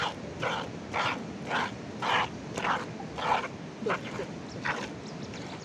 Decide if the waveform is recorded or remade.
recorded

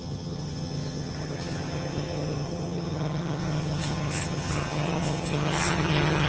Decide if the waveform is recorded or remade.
remade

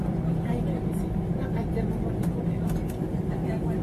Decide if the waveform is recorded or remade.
recorded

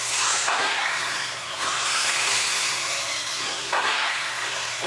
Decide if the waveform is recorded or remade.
remade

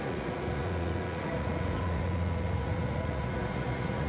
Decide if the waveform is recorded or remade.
remade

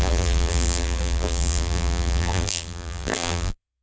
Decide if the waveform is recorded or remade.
remade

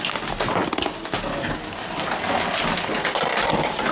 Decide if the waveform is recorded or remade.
recorded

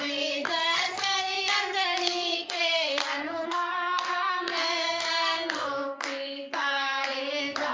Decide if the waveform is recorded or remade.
remade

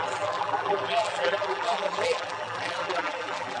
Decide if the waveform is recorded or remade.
remade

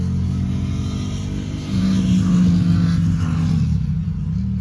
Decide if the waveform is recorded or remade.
recorded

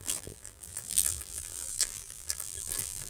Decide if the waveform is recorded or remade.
remade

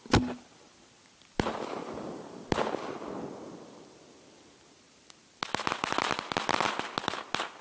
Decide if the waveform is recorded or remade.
recorded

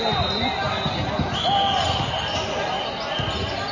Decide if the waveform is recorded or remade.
recorded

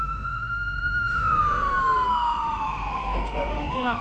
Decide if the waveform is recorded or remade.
remade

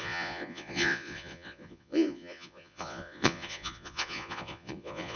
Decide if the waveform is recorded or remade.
remade